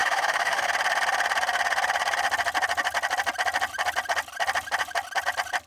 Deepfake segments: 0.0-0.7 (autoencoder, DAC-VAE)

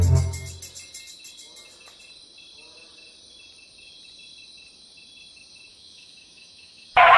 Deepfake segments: 5.7-7.2 (autoencoder, DAC-VAE)